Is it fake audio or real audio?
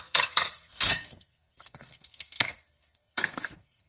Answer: fake